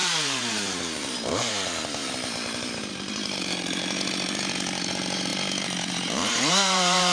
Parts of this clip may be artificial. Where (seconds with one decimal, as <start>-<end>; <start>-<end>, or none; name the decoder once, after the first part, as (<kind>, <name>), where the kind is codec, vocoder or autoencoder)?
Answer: 0.0-7.1 (vocoder, BigVGAN v2)